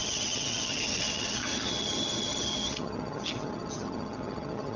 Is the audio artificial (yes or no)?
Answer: yes